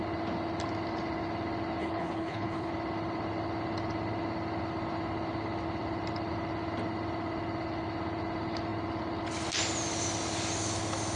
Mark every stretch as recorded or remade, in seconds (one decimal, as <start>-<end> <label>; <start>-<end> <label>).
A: 0.0-1.8 recorded; 1.8-2.7 remade; 2.7-11.2 recorded